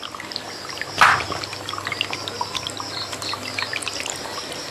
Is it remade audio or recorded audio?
recorded